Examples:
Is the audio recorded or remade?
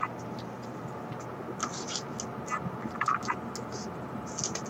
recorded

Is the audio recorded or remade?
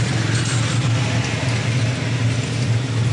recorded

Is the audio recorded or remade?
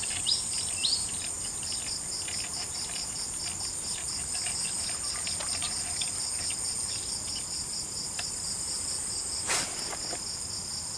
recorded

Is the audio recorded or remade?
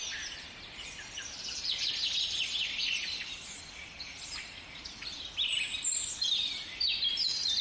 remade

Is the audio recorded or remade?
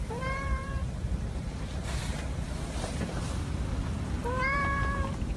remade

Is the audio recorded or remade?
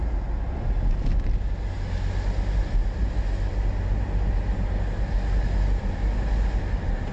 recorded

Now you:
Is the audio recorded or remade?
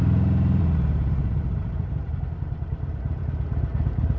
remade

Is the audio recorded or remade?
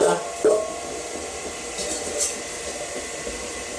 remade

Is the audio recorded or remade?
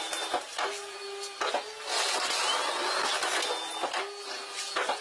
recorded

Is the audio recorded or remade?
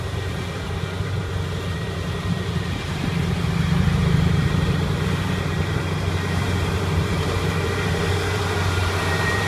remade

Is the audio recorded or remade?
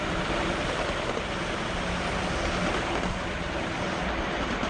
recorded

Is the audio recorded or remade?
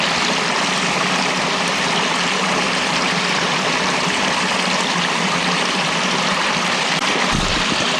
remade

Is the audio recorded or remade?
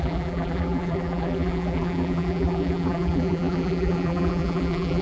remade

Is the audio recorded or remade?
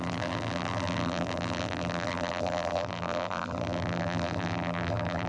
remade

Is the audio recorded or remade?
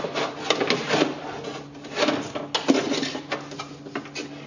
recorded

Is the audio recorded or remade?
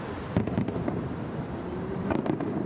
remade